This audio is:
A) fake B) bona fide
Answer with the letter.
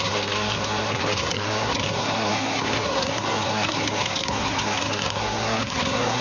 A